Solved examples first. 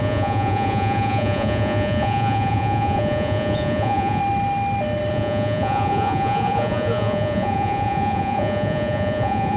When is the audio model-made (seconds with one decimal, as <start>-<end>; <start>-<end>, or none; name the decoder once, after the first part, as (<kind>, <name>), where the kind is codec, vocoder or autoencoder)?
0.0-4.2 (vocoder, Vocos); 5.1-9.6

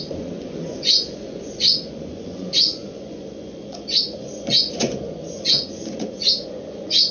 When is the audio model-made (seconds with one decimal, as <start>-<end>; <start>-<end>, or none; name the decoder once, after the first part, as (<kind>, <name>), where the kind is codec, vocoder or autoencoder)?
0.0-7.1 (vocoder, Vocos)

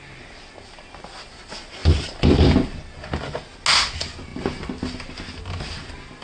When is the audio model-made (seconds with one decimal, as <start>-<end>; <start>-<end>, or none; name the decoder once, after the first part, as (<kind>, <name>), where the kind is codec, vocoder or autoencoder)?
none